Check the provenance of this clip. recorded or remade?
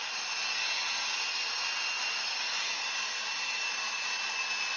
recorded